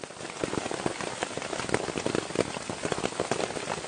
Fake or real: real